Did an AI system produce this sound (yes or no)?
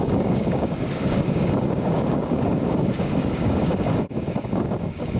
yes